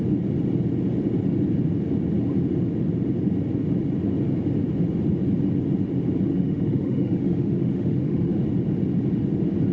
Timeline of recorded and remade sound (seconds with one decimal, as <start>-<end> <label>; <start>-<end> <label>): 0.0-6.3 recorded; 6.3-8.4 remade; 8.4-9.7 recorded